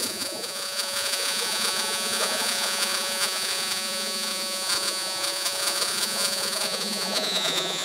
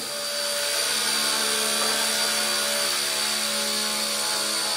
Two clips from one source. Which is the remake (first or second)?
first